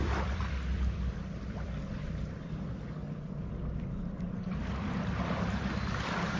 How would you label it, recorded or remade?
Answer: remade